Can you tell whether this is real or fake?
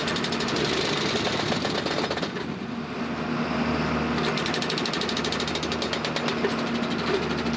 real